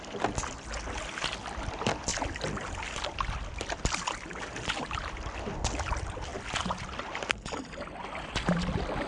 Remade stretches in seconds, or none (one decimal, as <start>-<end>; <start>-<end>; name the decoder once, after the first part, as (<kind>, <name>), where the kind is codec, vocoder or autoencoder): 2.1-4.4 (vocoder, BigVGAN v2)